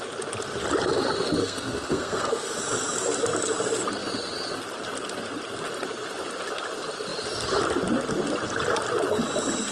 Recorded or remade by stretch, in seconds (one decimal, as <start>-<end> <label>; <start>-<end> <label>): 0.0-1.4 recorded; 1.4-2.6 remade; 2.6-9.7 recorded